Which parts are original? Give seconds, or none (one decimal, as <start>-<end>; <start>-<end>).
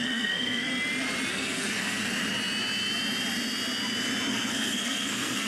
0.7-1.3; 2.0-4.3